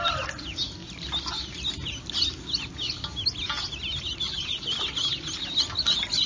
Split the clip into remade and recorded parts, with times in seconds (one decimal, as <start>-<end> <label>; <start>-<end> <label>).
0.0-6.3 recorded

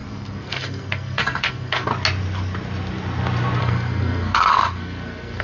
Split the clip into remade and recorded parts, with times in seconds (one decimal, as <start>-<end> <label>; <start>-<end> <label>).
0.0-1.9 remade; 1.9-3.6 recorded; 3.6-5.4 remade

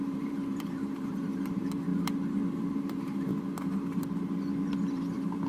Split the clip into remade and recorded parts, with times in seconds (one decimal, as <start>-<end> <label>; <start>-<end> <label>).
0.0-1.9 remade; 1.9-2.7 recorded; 2.7-3.3 remade; 3.3-4.9 recorded; 4.9-5.5 remade

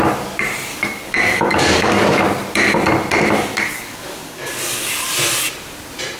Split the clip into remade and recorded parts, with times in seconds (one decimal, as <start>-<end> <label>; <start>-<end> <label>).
0.0-0.7 recorded; 0.7-2.2 remade; 2.2-3.5 recorded; 3.5-4.9 remade; 4.9-6.2 recorded

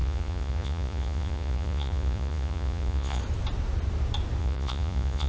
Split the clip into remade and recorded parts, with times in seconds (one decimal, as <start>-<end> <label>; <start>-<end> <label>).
0.0-3.2 remade; 3.2-4.4 recorded; 4.4-5.3 remade